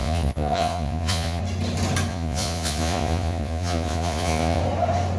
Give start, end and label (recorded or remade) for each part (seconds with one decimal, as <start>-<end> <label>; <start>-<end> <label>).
0.0-1.4 remade; 1.4-2.1 recorded; 2.1-4.6 remade; 4.6-5.2 recorded